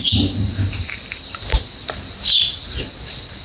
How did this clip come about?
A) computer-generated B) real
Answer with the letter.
B